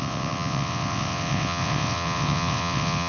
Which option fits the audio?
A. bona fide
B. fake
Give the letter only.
B